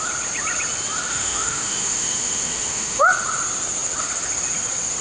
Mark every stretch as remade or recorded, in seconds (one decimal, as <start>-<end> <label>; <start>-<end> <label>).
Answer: 0.0-1.1 recorded; 1.1-3.0 remade; 3.0-5.0 recorded